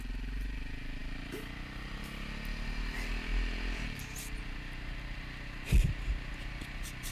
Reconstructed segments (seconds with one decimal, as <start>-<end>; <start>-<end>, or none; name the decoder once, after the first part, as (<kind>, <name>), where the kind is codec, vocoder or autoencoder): none